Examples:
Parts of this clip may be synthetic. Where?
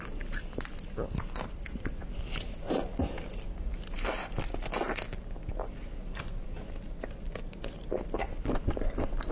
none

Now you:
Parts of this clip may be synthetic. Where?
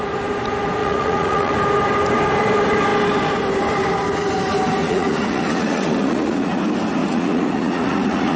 0.8-1.5 (vocoder, Vocos); 4.8-6.6; 7.0-8.4